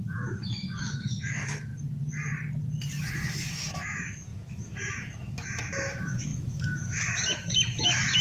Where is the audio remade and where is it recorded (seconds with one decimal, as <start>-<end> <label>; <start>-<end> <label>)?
0.0-1.7 remade; 1.7-3.0 recorded; 3.0-8.2 remade